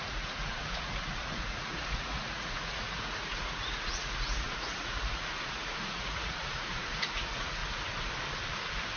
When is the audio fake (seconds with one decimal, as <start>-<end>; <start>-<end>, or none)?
0.0-7.6